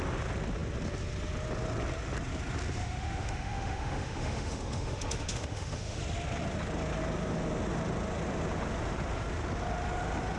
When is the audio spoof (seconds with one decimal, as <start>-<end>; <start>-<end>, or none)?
2.8-6.0